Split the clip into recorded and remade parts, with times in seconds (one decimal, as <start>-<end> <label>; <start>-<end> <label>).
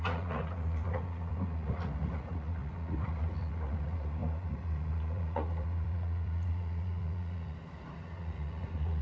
0.0-9.0 remade